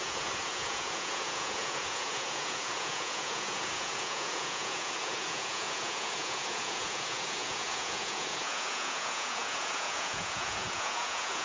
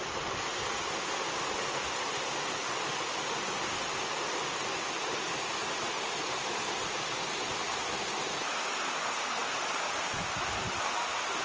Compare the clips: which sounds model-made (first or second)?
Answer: first